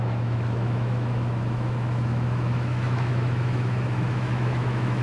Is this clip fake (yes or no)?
yes